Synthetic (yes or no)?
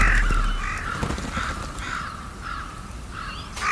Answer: no